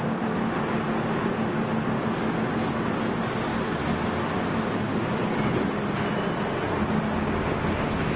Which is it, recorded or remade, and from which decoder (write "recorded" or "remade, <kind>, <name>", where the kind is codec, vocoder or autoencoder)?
recorded